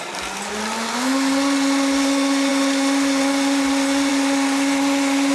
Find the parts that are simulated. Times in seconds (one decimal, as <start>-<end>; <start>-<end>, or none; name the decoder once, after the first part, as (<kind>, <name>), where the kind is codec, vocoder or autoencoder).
none